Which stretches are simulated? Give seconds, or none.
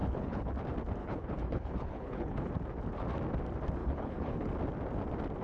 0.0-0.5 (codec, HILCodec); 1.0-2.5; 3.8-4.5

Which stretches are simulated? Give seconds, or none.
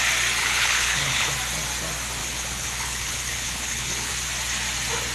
0.4-1.3 (codec, HILCodec); 2.2-4.1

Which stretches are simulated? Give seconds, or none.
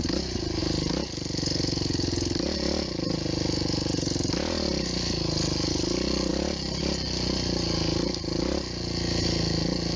none